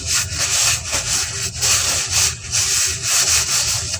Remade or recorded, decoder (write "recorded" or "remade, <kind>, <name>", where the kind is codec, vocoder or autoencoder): recorded